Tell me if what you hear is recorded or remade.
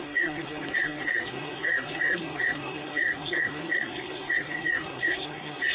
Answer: remade